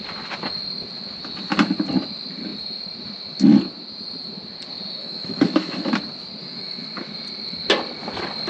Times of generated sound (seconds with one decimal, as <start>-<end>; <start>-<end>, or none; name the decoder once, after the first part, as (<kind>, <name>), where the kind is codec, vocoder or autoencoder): 5.0-5.9 (autoencoder, DAC-VAE); 6.4-7.1